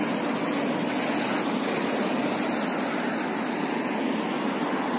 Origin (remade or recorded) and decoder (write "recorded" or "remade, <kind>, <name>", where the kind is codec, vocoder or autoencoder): recorded